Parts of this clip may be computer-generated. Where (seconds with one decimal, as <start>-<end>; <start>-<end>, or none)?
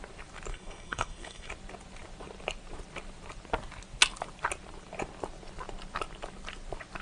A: 0.5-1.5